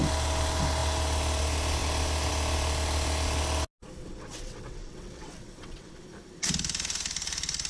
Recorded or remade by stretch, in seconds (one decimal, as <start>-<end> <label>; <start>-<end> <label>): 0.0-4.0 recorded; 4.0-5.9 remade; 5.9-7.7 recorded